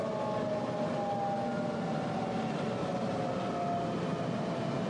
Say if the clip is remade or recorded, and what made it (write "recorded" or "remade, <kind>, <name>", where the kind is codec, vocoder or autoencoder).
recorded